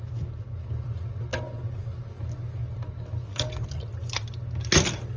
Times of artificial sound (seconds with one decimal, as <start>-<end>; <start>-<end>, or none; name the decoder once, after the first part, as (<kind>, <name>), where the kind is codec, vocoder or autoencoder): none